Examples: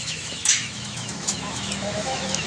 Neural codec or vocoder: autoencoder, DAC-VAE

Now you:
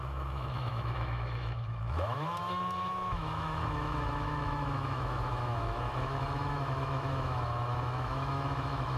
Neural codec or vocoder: autoencoder, DAC-VAE